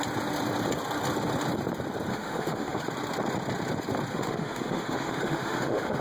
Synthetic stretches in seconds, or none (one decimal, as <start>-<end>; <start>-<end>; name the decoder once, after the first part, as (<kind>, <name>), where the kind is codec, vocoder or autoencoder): 2.1-2.8 (autoencoder, DAC-VAE); 4.1-6.0